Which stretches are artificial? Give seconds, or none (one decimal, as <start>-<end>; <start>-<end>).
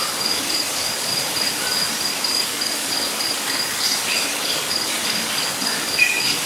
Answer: 0.0-1.1; 2.1-6.5